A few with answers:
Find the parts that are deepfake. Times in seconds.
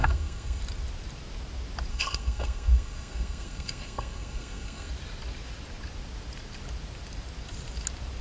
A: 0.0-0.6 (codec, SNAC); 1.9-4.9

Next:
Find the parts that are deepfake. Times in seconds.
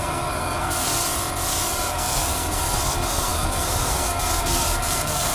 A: 0.0-1.0 (codec, SNAC); 1.6-5.3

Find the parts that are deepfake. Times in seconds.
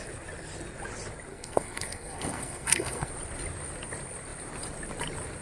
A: 1.3-3.1 (codec, SNAC)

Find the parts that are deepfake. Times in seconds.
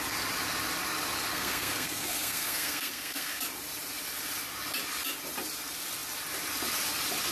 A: 1.3-3.4 (codec, SNAC)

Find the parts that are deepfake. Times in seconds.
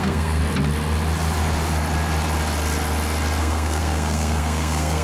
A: 0.0-0.4 (codec, SNAC); 3.4-5.0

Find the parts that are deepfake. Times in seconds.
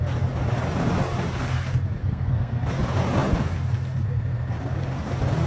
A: 2.0-2.6 (codec, SNAC)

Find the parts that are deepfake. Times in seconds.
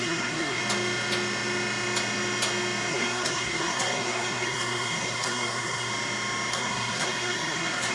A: 0.0-0.6 (codec, SNAC); 2.9-5.9; 6.5-7.9